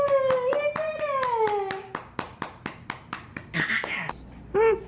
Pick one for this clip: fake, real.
real